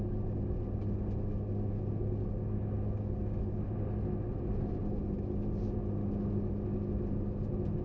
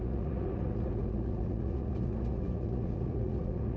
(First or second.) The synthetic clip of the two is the second